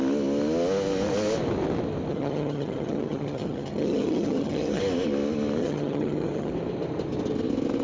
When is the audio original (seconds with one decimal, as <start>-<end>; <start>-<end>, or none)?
0.0-2.1; 4.8-5.6; 6.5-7.8